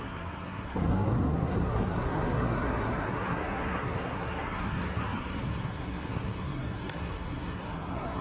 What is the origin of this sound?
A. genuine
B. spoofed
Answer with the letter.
B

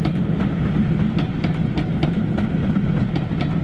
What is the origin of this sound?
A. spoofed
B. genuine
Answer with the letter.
B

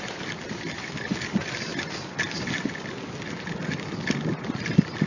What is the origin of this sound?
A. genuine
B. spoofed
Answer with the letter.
A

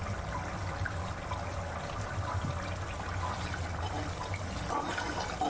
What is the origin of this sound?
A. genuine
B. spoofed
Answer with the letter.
A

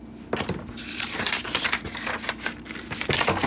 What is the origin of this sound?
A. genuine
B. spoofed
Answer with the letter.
A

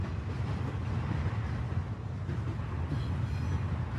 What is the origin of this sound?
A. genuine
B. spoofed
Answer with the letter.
A